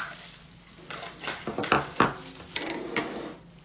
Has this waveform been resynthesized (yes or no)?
no